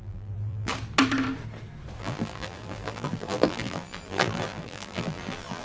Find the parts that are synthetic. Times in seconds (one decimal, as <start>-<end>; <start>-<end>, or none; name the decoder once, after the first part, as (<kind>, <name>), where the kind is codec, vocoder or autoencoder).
0.0-0.7 (vocoder, BigVGAN v2); 2.0-5.6

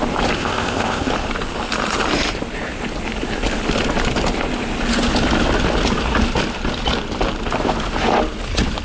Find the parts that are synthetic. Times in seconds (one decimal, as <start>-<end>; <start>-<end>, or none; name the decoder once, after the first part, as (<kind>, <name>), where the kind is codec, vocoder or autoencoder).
0.4-1.1 (codec, ZipCodec)

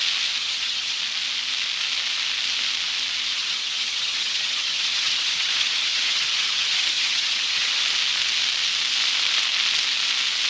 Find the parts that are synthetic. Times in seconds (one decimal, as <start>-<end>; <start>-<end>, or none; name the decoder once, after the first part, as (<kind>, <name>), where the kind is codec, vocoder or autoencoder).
0.4-1.0 (vocoder, HiFi-GAN); 3.3-7.8

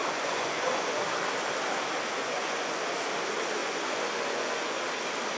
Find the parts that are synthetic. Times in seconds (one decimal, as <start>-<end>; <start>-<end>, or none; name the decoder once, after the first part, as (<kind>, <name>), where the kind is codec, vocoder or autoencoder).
0.0-1.0 (vocoder, Vocos); 2.2-2.8; 3.6-4.8

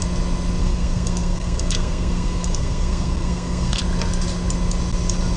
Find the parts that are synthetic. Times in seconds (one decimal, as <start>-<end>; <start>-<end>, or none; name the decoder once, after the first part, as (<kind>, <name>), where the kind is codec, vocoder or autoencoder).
0.6-3.8 (codec, SNAC)

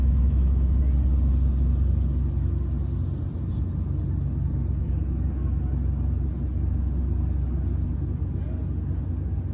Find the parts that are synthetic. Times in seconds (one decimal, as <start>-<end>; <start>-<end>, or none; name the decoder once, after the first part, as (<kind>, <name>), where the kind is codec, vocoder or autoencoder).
0.0-0.8 (autoencoder, DAC-VAE)

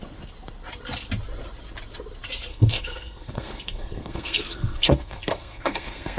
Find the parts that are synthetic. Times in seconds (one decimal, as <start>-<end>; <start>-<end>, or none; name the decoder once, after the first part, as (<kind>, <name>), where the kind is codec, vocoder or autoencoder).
2.5-6.2 (codec, SNAC)

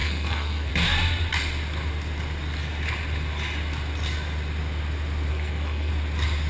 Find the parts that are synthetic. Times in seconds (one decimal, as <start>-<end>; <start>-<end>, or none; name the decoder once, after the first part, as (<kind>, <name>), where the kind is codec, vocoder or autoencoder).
0.0-0.7 (codec, SNAC); 5.3-5.9